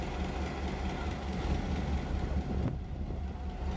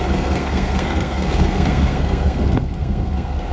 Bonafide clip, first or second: first